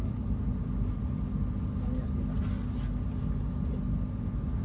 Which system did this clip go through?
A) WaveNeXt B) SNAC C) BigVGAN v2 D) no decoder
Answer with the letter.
D